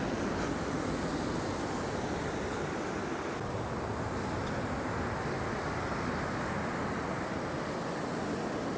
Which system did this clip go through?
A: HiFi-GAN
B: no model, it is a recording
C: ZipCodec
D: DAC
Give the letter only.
B